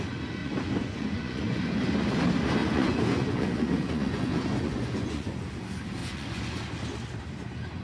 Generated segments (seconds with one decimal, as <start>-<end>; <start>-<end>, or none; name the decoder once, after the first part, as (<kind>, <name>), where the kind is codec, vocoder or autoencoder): 0.4-2.2 (vocoder, Vocos); 2.6-5.5; 6.0-6.6